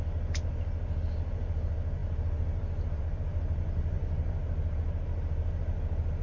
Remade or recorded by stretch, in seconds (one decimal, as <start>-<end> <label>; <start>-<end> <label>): 0.0-6.2 recorded